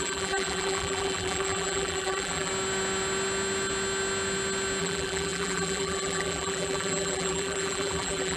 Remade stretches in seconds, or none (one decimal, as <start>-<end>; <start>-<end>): 0.0-2.5; 4.8-8.4